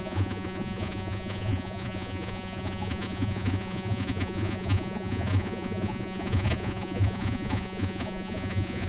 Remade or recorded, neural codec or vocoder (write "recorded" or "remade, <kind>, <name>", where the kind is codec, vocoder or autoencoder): remade, vocoder, Vocos